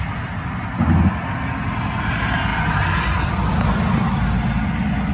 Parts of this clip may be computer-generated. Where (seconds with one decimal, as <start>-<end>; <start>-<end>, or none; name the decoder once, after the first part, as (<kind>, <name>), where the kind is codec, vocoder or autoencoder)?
none